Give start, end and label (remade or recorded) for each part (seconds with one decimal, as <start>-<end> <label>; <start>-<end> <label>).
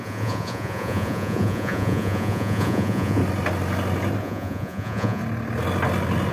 0.0-3.2 remade; 3.2-4.2 recorded; 4.2-5.2 remade; 5.2-6.3 recorded